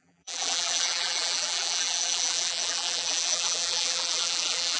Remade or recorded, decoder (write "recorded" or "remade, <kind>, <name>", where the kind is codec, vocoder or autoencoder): remade, vocoder, BigVGAN v2